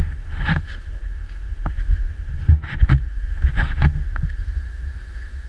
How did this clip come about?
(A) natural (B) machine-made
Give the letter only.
B